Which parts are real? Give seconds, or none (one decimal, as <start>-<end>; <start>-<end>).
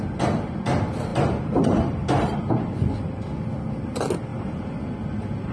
0.0-1.1; 2.4-4.3; 4.8-5.5